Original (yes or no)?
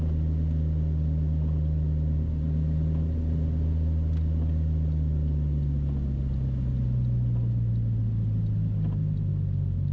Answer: yes